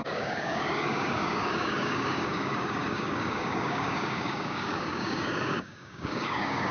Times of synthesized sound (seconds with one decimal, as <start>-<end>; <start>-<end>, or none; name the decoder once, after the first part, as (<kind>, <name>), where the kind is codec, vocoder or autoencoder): 0.0-6.7 (codec, DAC)